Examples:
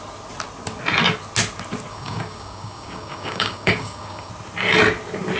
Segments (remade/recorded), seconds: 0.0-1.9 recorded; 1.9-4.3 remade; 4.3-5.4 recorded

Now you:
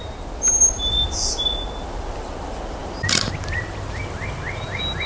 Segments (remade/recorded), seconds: 0.0-5.1 recorded

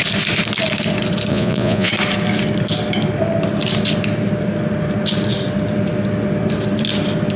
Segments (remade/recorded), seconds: 0.0-1.3 recorded; 1.3-1.9 remade; 1.9-7.4 recorded

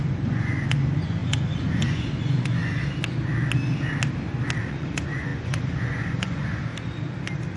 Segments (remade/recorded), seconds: 0.0-2.6 remade; 2.6-4.7 recorded; 4.7-6.7 remade; 6.7-7.6 recorded

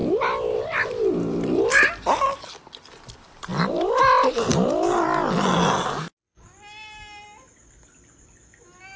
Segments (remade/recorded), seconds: 0.0-9.0 recorded

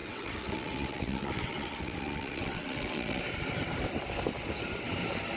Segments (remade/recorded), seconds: 0.0-3.2 remade; 3.2-5.4 recorded